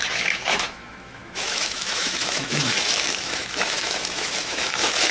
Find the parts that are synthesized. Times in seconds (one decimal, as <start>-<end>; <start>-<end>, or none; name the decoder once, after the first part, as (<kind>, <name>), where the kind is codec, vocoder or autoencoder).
0.0-5.1 (autoencoder, DAC-VAE)